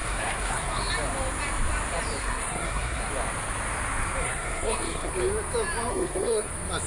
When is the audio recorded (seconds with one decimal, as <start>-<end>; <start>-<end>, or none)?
0.9-2.2; 3.1-4.2; 5.1-5.9; 6.5-6.9